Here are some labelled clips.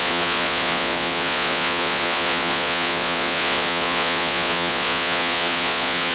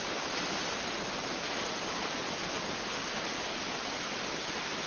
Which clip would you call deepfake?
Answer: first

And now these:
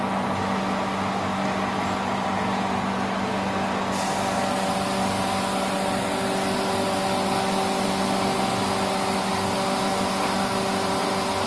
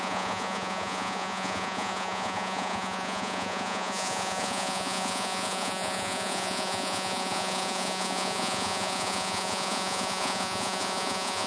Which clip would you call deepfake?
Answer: second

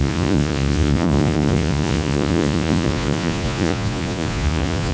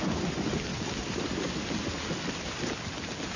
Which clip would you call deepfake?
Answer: first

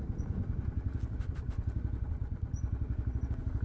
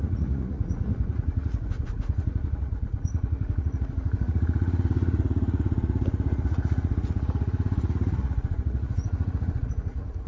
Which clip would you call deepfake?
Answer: second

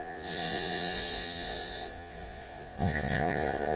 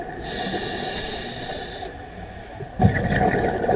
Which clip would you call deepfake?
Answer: first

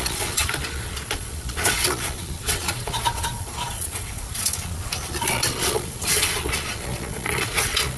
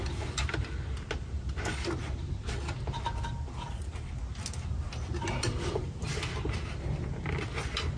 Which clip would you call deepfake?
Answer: first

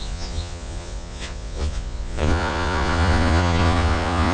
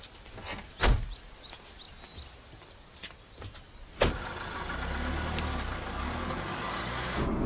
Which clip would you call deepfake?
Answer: first